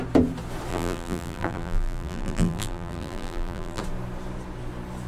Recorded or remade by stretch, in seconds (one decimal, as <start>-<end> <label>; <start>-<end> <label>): 0.0-0.7 recorded; 0.7-3.8 remade; 3.8-5.1 recorded